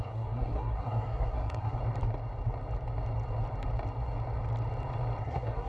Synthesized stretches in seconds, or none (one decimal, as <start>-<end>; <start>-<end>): 0.0-1.8; 5.2-5.7